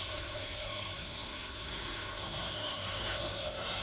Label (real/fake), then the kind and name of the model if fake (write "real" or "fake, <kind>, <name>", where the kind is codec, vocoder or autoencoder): fake, codec, SNAC